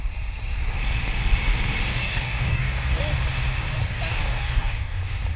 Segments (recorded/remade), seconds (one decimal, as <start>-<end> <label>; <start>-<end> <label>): 0.0-1.9 recorded; 1.9-3.0 remade; 3.0-4.1 recorded; 4.1-5.0 remade; 5.0-5.4 recorded